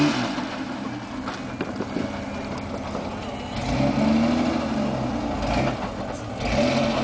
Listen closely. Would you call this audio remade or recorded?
recorded